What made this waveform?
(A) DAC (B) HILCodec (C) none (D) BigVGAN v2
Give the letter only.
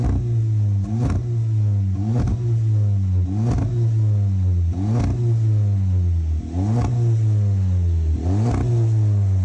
C